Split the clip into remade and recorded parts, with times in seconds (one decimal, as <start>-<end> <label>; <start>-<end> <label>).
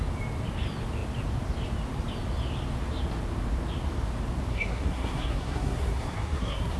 0.0-4.5 recorded; 4.5-6.8 remade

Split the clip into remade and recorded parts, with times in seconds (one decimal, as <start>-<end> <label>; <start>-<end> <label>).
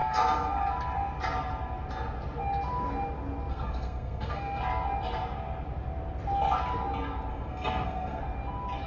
0.0-0.6 remade; 0.6-3.5 recorded; 3.5-4.6 remade; 4.6-7.3 recorded; 7.3-8.2 remade; 8.2-8.9 recorded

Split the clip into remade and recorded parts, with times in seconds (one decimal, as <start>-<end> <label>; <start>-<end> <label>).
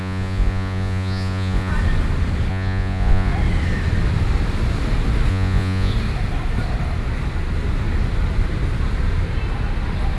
0.0-1.7 remade; 1.7-2.5 recorded; 2.5-3.3 remade; 3.3-5.3 recorded; 5.3-5.9 remade; 5.9-10.2 recorded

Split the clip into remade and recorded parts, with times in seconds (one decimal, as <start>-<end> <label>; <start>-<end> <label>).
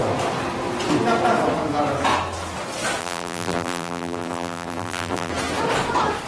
0.0-3.0 recorded; 3.0-5.3 remade; 5.3-6.3 recorded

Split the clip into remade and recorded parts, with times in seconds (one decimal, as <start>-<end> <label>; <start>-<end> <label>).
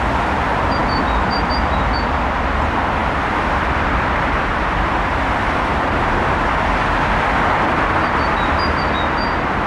0.0-0.8 recorded; 0.8-2.3 remade; 2.3-3.0 recorded; 3.0-4.0 remade; 4.0-4.5 recorded; 4.5-7.2 remade; 7.2-9.7 recorded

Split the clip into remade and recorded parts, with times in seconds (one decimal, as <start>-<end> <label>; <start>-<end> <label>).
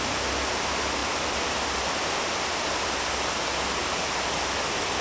0.0-5.0 recorded